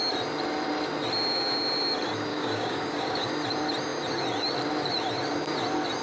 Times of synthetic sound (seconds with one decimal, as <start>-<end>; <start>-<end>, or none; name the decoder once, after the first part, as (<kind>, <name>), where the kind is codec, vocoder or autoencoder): 2.3-3.3 (codec, DAC)